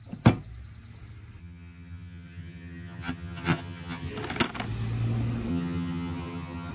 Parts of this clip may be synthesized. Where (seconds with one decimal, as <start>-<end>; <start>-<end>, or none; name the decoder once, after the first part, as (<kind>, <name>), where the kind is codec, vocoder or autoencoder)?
1.4-4.1 (vocoder, HiFi-GAN); 5.5-6.7